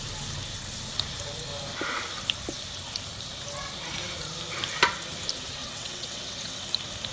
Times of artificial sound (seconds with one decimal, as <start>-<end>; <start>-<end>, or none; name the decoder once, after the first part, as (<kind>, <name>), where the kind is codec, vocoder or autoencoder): 5.6-6.6 (vocoder, WaveNeXt)